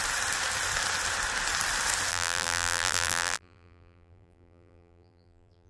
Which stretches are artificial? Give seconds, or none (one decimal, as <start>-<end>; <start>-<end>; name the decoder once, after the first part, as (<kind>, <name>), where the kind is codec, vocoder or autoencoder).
2.1-5.7 (vocoder, BigVGAN v2)